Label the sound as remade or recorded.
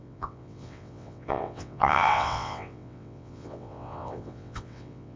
remade